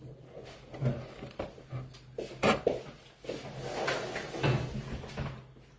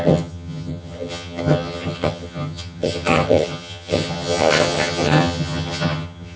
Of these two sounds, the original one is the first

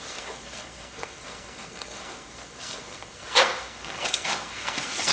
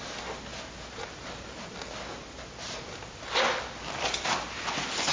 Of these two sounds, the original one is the second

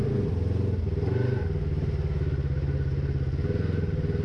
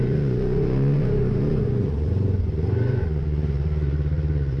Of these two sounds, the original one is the first